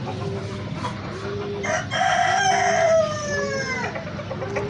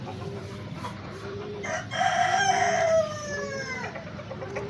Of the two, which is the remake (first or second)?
second